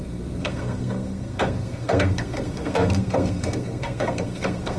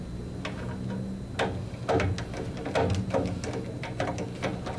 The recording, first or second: second